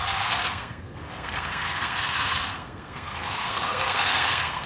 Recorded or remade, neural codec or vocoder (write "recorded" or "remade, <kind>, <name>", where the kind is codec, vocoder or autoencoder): remade, codec, SNAC